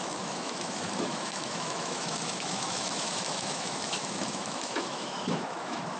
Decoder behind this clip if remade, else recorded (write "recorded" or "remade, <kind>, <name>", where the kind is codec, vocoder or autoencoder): remade, autoencoder, DAC-VAE